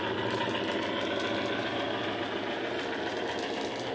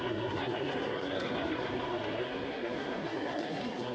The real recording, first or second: first